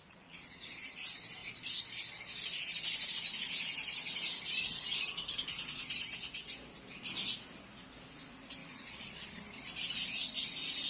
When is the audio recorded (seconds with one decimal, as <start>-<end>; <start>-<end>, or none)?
0.7-8.6; 9.1-10.9